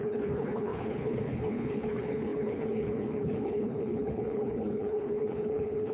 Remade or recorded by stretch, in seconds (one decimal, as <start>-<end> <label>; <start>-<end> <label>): 0.0-5.9 remade